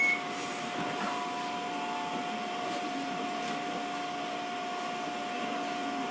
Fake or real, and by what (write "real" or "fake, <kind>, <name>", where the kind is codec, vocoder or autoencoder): real